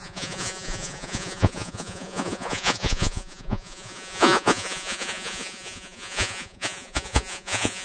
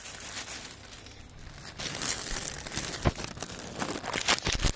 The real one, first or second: second